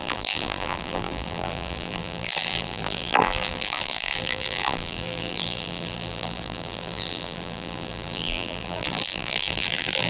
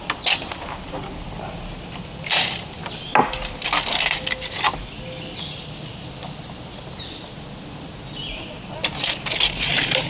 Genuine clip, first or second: second